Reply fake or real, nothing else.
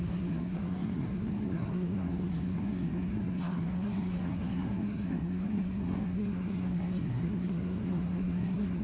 fake